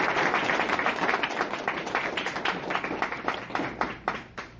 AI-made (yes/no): no